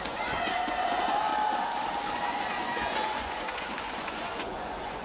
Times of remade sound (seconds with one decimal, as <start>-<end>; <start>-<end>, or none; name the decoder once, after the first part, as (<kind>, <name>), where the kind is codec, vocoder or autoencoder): 0.0-1.3 (vocoder, Vocos); 2.1-5.0